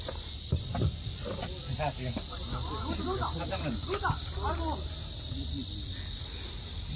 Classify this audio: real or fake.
real